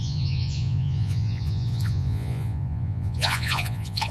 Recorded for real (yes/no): no